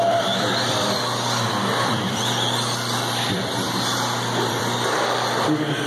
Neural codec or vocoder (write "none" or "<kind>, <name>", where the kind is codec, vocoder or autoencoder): vocoder, BigVGAN v2